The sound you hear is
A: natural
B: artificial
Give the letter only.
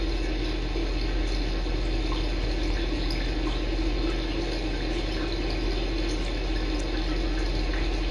A